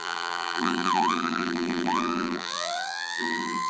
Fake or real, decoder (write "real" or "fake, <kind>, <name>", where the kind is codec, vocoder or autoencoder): fake, vocoder, BigVGAN v2